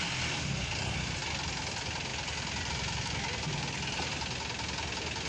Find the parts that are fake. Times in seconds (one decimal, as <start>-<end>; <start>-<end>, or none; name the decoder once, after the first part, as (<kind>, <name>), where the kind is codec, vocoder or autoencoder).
none